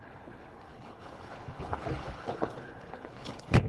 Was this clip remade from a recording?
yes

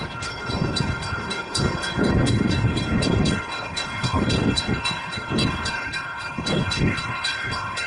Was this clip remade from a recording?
yes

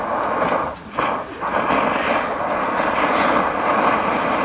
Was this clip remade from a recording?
no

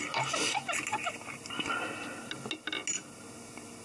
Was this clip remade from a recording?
no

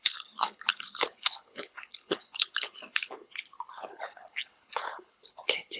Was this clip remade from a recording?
yes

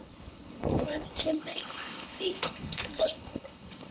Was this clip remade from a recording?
yes